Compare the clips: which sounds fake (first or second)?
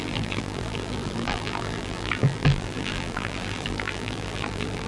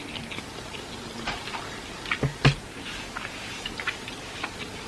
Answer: first